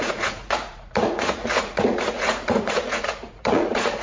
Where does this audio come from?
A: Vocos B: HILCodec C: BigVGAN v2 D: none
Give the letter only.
A